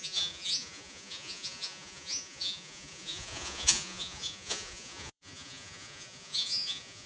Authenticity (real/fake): fake